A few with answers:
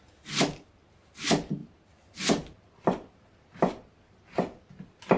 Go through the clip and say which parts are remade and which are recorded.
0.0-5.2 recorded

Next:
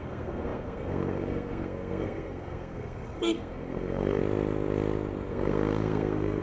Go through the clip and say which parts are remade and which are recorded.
0.0-4.2 remade; 4.2-5.3 recorded; 5.3-6.4 remade